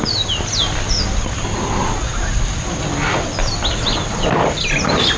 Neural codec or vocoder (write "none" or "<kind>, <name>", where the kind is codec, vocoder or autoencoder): none